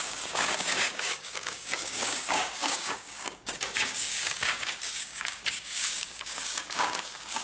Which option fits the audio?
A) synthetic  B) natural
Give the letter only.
A